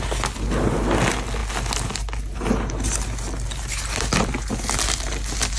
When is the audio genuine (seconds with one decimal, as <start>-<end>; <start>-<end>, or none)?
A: 0.0-5.6